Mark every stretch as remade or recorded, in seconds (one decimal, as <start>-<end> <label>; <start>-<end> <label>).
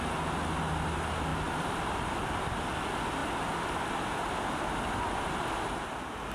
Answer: 0.0-6.3 recorded